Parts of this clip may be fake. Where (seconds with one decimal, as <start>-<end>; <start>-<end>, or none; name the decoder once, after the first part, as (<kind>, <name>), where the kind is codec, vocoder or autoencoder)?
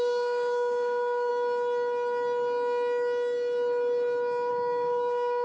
0.0-1.3 (codec, DAC); 4.5-5.4